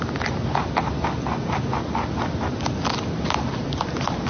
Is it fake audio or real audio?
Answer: real